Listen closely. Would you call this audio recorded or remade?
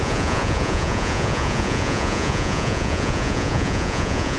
remade